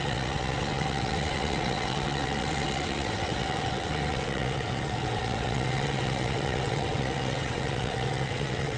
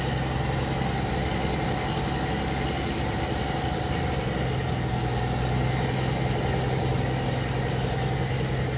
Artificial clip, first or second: first